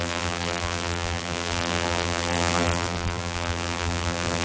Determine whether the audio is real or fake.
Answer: fake